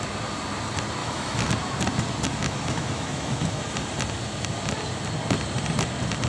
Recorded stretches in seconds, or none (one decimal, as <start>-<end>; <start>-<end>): 0.0-1.0; 1.5-2.4; 3.6-6.3